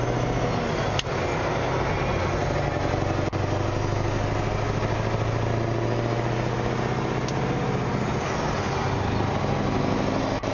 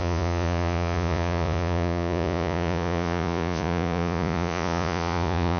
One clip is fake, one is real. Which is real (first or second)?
first